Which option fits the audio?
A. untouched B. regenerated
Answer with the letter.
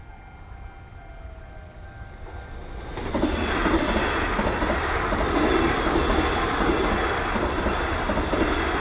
A